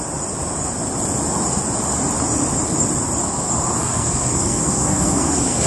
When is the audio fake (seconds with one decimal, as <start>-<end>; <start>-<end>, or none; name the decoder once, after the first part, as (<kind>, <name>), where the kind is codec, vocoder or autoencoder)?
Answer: 3.8-5.7 (codec, SNAC)